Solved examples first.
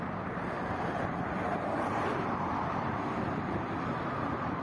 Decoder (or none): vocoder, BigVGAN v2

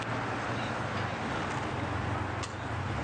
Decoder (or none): none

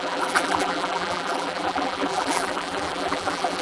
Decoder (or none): vocoder, BigVGAN v2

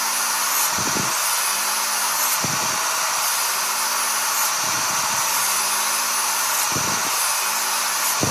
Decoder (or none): none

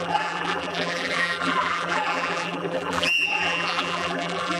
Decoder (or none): vocoder, BigVGAN v2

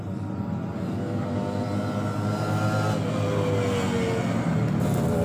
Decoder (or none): none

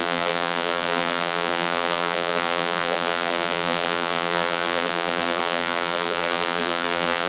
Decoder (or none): vocoder, BigVGAN v2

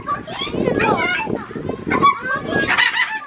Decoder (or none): none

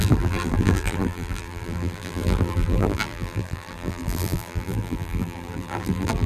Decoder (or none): vocoder, BigVGAN v2